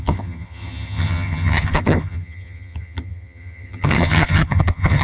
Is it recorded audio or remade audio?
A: remade